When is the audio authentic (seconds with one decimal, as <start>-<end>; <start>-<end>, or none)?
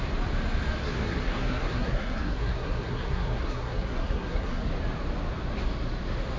0.0-0.8; 4.6-6.4